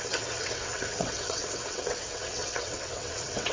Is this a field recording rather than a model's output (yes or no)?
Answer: no